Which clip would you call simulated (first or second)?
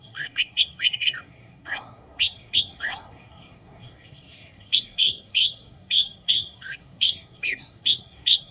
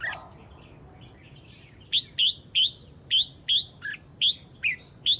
first